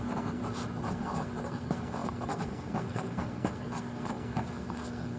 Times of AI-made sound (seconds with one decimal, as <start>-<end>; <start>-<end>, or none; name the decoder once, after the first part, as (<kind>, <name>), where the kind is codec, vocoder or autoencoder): 0.0-0.4 (codec, SNAC); 0.9-5.2